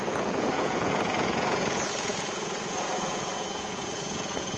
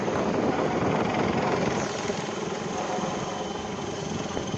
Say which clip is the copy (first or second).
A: first